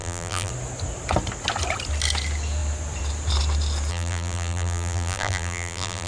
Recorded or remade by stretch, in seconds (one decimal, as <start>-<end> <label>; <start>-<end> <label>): 0.0-0.5 remade; 0.5-3.9 recorded; 3.9-6.1 remade